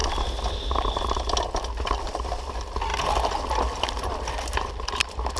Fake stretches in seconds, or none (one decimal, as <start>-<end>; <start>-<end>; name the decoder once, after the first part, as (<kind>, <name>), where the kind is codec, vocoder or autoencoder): none